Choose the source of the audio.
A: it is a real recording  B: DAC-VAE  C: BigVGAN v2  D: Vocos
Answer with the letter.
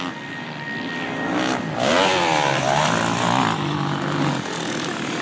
A